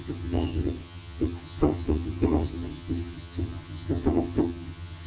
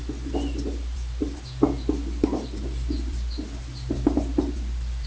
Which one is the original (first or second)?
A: second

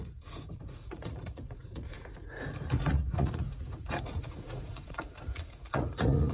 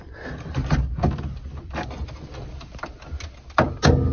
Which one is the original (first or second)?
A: second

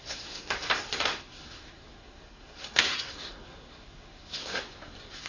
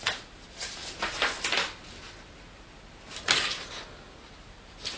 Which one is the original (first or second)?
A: second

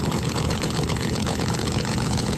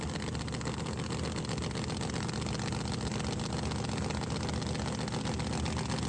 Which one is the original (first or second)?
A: second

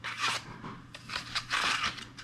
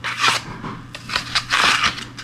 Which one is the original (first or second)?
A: second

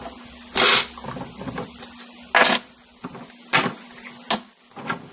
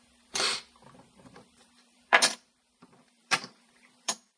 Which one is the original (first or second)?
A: first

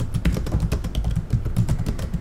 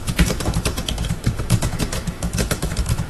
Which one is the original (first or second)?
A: first